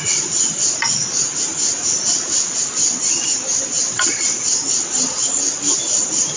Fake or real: real